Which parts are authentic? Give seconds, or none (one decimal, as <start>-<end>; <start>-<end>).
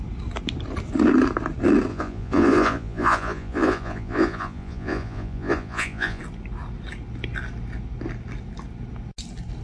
0.0-1.9; 6.2-9.6